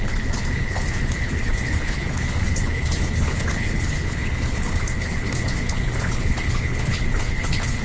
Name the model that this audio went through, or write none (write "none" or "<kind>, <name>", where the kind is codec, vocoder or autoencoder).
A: codec, HILCodec